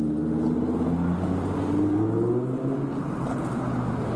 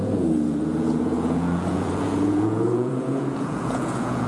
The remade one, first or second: second